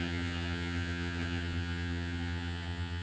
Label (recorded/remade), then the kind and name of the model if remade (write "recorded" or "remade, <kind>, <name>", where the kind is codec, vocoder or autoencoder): remade, vocoder, HiFi-GAN